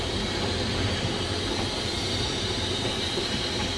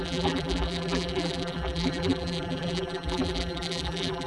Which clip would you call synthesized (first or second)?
second